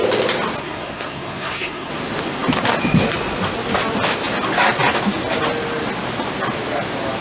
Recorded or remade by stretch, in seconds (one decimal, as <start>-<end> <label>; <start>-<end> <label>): 0.0-0.6 recorded; 0.6-1.9 remade; 1.9-7.2 recorded